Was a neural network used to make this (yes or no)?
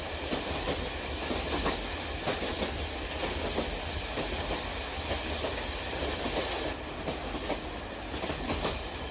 no